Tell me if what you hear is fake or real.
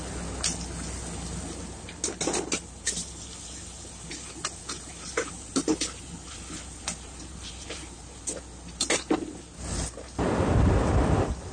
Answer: real